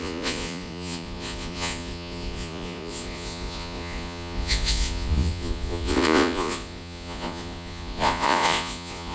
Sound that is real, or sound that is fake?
fake